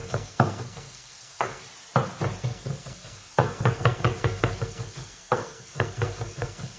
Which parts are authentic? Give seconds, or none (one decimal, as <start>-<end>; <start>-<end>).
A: 1.6-2.4